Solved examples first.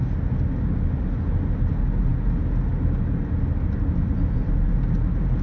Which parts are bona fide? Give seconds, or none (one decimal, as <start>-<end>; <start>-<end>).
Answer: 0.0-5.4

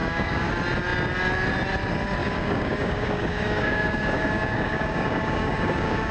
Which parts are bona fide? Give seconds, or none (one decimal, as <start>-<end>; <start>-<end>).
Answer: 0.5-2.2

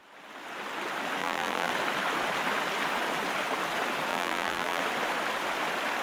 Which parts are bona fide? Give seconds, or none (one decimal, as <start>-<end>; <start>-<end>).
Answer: 0.0-1.2; 1.7-4.1; 4.8-6.0